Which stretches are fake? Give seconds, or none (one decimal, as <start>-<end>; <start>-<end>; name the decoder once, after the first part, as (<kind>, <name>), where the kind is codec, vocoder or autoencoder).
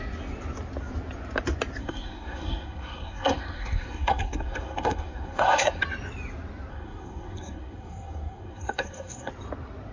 1.8-5.8 (codec, SNAC); 6.7-9.3